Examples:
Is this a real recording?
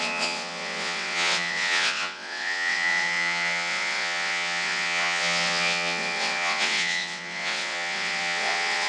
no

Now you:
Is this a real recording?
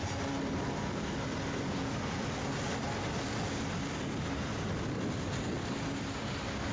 yes